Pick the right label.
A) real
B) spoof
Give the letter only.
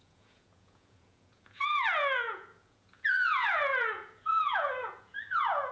B